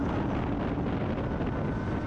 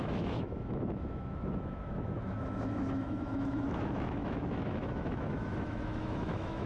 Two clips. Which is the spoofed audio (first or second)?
second